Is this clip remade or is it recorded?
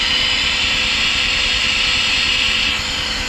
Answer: recorded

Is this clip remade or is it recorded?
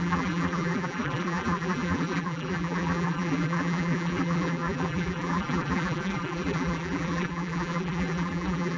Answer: remade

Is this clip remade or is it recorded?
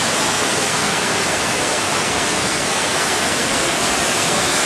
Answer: remade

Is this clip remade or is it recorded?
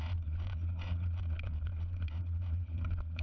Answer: remade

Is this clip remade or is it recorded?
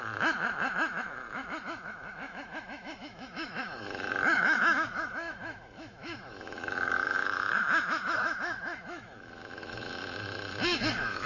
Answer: remade